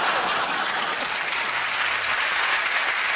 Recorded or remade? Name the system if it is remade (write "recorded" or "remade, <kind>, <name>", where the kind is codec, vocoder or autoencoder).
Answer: recorded